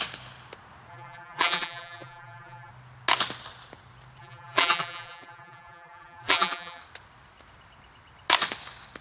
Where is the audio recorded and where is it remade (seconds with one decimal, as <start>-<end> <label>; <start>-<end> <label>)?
0.0-0.9 recorded; 0.9-2.7 remade; 2.7-4.2 recorded; 4.2-6.8 remade; 6.8-9.0 recorded